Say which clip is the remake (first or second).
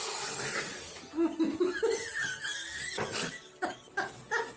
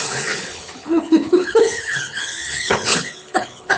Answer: second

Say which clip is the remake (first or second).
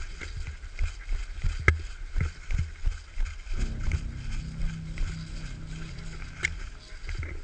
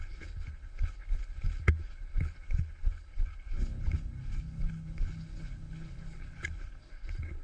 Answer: second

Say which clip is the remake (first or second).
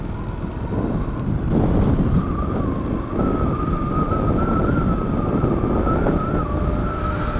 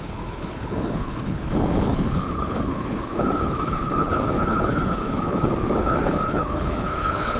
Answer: second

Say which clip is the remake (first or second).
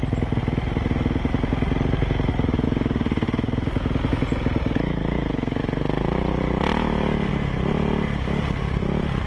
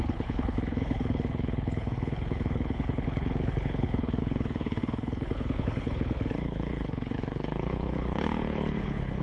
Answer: second